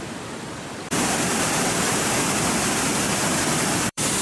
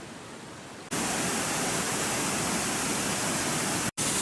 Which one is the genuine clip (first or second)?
second